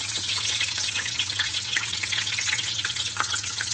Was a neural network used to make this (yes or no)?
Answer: yes